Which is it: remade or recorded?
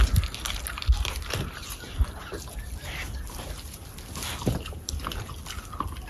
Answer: recorded